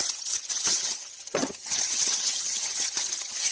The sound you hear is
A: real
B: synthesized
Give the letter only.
B